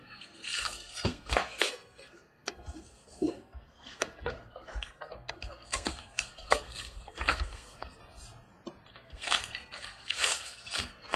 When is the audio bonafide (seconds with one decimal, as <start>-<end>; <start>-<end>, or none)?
8.0-8.9